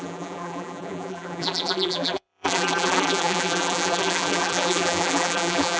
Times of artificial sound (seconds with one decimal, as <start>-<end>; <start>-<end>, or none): 0.0-5.8